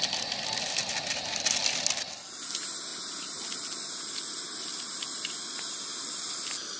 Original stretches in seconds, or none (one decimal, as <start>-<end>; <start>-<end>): 0.0-6.8